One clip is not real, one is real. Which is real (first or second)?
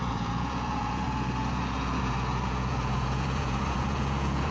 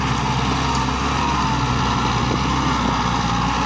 second